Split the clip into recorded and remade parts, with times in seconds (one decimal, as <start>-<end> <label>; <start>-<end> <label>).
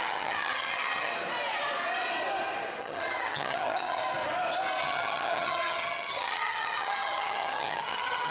0.0-1.1 remade; 1.1-2.8 recorded; 2.8-4.0 remade; 4.0-4.8 recorded; 4.8-8.3 remade